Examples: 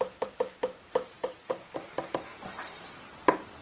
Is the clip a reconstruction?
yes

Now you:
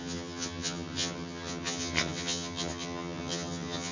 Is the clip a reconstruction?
yes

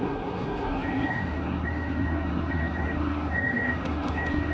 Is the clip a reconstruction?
yes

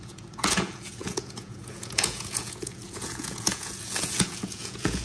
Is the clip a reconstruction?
yes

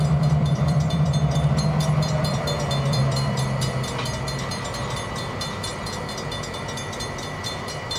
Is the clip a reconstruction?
yes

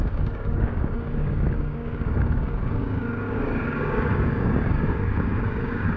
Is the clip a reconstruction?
yes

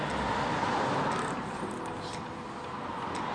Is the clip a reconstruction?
no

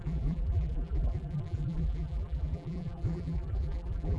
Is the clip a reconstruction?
yes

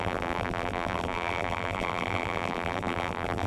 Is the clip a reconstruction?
yes